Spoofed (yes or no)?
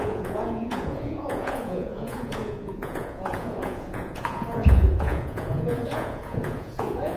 yes